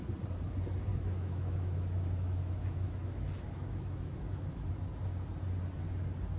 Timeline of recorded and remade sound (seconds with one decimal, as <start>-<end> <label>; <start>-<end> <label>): 0.0-0.9 recorded; 0.9-4.7 remade; 4.7-6.4 recorded